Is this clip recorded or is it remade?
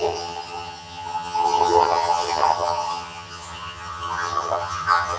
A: remade